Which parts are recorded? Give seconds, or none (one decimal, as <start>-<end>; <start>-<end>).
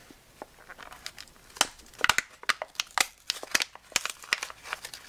0.0-5.1